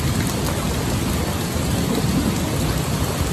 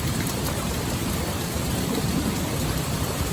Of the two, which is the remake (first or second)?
second